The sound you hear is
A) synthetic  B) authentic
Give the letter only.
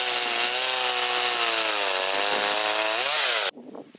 B